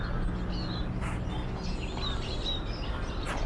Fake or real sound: real